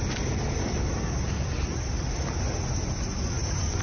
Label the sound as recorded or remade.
recorded